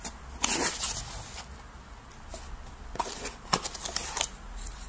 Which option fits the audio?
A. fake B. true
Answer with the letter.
B